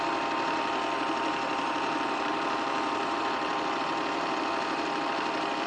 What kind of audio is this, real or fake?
fake